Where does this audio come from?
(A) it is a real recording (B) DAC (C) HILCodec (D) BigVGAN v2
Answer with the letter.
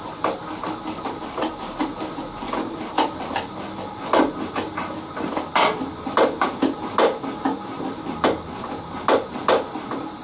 A